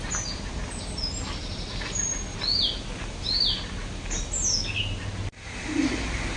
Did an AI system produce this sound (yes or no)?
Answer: no